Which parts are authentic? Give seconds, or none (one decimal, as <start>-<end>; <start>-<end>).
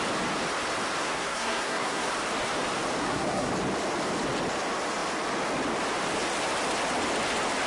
0.0-1.0; 2.1-3.0; 3.5-7.7